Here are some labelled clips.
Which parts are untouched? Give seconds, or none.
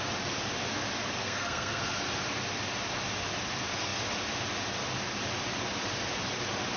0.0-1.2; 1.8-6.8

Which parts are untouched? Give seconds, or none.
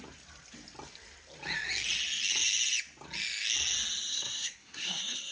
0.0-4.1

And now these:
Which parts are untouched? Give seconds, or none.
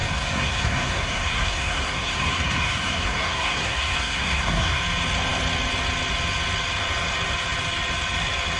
4.8-8.6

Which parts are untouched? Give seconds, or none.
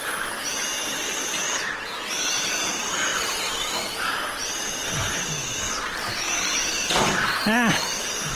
0.0-8.3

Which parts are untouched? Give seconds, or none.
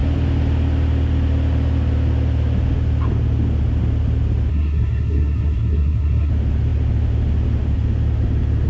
0.0-4.5; 6.3-8.7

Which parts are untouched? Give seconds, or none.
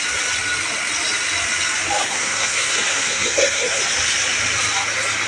0.0-2.0; 3.8-5.3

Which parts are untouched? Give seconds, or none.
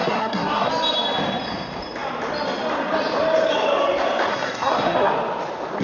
0.7-4.3; 5.1-5.8